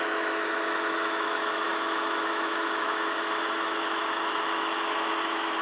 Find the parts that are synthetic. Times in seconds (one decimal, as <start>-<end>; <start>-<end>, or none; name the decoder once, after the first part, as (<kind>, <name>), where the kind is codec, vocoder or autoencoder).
0.0-5.6 (autoencoder, DAC-VAE)